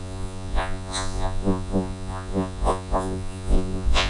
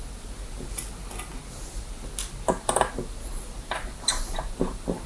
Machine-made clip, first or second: first